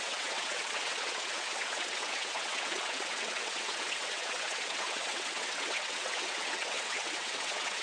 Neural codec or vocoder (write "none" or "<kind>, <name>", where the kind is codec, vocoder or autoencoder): vocoder, WaveNeXt